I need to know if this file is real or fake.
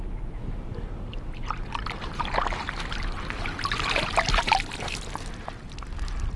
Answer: real